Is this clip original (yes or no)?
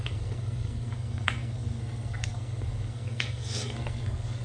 no